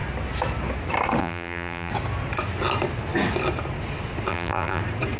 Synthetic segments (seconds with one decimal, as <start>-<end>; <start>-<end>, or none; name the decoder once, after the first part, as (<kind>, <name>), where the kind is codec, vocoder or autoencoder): 1.2-1.9 (vocoder, BigVGAN v2); 4.3-4.8